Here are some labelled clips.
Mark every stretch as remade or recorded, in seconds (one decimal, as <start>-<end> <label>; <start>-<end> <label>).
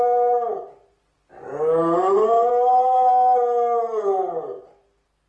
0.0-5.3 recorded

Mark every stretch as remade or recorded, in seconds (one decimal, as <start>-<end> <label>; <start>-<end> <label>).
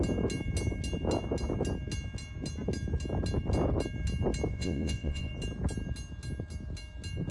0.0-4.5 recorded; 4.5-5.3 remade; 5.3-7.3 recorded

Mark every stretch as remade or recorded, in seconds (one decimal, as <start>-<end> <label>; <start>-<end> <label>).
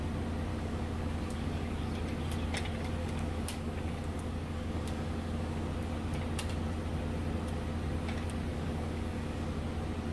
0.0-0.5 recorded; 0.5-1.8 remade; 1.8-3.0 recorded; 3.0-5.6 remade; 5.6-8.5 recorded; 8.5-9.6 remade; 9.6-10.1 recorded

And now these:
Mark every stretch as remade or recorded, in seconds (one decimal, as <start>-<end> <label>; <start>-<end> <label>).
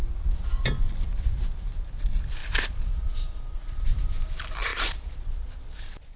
0.0-2.4 recorded; 2.4-4.3 remade; 4.3-4.7 recorded; 4.7-6.2 remade